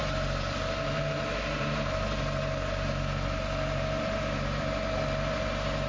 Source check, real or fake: fake